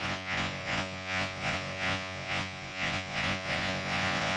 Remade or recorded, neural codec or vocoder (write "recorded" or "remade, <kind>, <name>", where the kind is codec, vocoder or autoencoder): remade, vocoder, Vocos